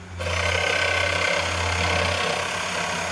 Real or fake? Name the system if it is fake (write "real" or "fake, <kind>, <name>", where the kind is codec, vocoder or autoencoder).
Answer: real